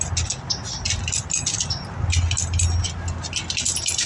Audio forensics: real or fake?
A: real